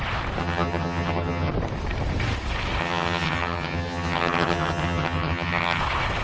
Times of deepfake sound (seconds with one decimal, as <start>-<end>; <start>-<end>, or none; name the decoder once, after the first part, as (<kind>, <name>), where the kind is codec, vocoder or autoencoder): 0.4-1.5 (vocoder, HiFi-GAN); 2.8-5.8